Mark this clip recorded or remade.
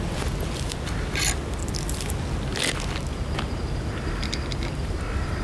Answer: recorded